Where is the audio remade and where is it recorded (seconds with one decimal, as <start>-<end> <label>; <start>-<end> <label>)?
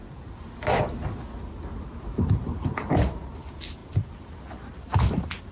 0.0-5.5 recorded